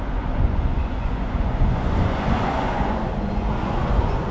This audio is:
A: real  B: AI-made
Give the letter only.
B